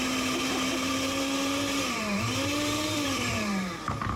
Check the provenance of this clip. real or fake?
fake